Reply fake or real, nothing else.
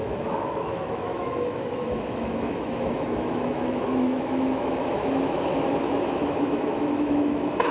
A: fake